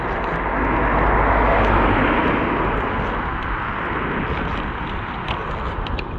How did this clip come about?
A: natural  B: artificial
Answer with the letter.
A